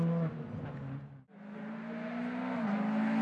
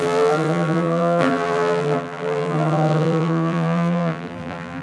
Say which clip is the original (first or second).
first